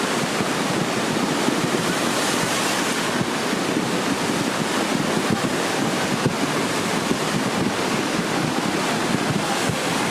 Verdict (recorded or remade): recorded